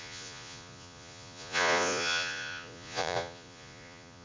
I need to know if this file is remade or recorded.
remade